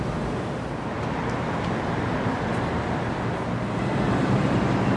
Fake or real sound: real